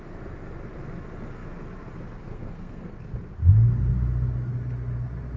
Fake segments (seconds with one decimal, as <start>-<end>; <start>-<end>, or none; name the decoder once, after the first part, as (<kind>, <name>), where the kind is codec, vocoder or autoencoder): 2.3-3.1 (codec, SNAC)